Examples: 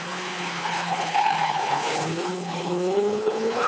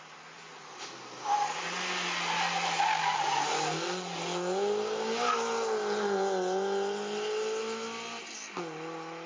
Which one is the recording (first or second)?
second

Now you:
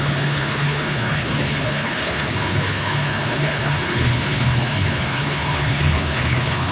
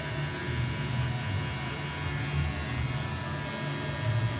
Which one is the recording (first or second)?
second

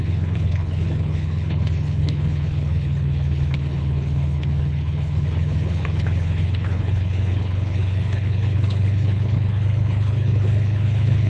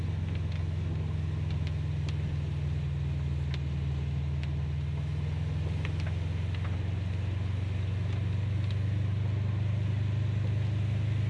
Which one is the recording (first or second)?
second